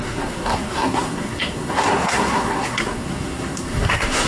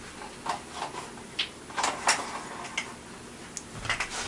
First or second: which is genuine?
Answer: second